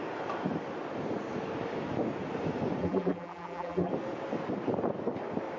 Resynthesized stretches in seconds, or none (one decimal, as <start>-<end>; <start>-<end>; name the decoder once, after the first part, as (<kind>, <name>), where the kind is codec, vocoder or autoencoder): 2.8-3.9 (vocoder, BigVGAN v2)